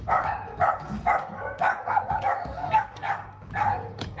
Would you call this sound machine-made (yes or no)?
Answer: yes